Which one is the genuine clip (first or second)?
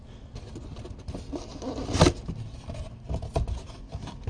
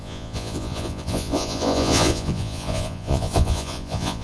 first